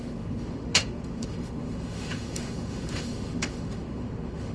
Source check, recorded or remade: remade